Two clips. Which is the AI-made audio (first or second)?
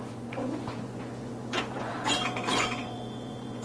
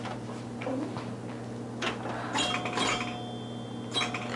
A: first